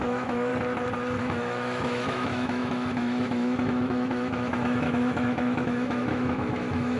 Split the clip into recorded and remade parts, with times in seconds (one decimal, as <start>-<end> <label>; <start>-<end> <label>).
0.0-0.5 remade; 0.5-1.2 recorded; 1.2-7.0 remade